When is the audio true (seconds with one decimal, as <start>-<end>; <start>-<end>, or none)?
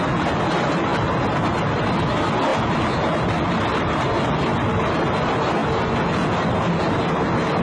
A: 0.0-7.6